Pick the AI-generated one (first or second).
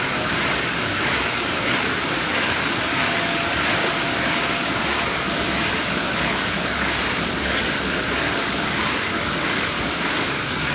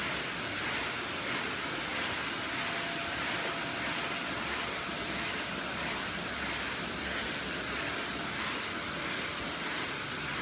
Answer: first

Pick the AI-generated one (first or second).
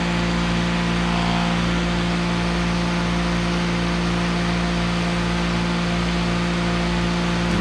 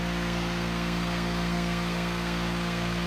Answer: second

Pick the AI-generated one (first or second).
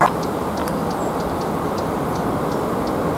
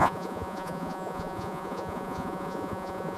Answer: second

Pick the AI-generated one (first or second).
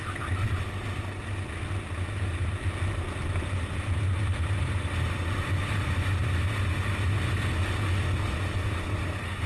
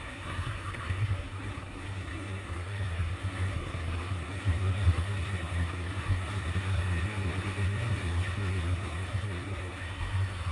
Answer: second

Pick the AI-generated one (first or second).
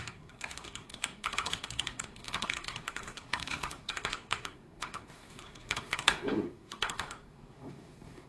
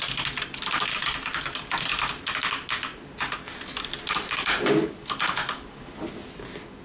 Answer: first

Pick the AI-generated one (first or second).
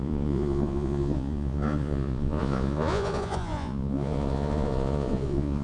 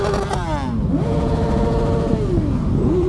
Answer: first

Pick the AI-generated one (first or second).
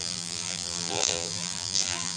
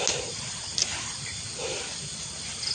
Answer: first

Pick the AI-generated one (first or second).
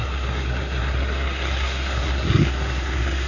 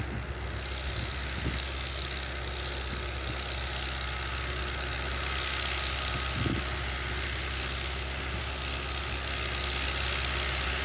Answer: first